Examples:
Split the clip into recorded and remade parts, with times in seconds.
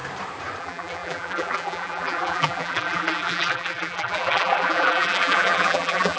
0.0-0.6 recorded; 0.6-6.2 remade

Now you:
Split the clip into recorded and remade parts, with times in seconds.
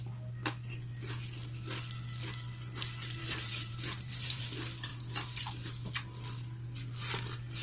0.0-3.2 recorded; 3.2-4.4 remade; 4.4-7.6 recorded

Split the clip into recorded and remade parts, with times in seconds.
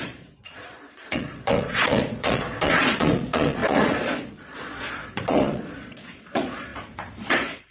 0.0-7.7 remade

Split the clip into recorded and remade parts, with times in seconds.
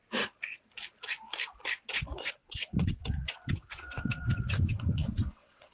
0.0-1.9 recorded; 1.9-5.7 remade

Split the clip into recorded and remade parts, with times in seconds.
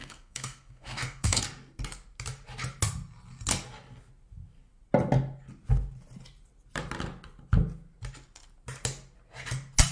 0.0-1.4 remade; 1.4-9.9 recorded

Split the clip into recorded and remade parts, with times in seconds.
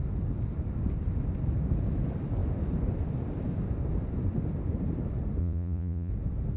0.0-5.4 recorded; 5.4-6.1 remade; 6.1-6.6 recorded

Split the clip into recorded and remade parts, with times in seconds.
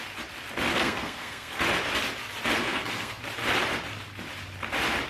0.0-0.7 recorded; 0.7-1.6 remade; 1.6-2.6 recorded; 2.6-3.2 remade; 3.2-5.1 recorded